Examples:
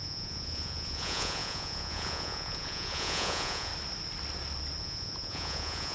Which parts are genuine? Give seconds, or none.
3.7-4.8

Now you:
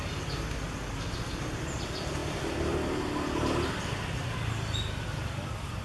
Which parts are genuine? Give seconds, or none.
0.0-5.8

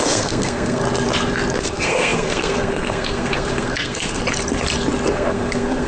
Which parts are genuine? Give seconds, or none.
0.8-1.6; 4.2-5.1

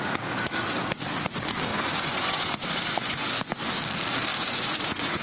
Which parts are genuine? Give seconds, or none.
0.0-1.7; 3.8-4.3

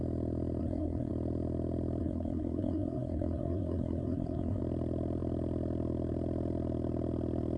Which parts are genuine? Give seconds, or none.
0.0-0.6; 1.1-2.0; 4.6-7.6

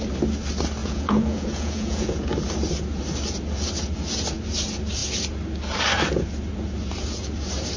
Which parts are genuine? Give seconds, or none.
0.0-0.8; 2.3-7.8

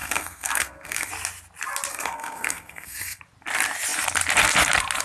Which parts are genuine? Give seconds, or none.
1.1-1.9; 3.2-5.0